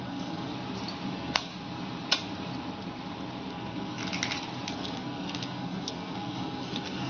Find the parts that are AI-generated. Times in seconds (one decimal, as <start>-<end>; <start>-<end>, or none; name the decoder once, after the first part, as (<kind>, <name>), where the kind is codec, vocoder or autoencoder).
0.0-0.5 (codec, SNAC); 1.1-1.5; 3.5-4.0; 4.7-7.1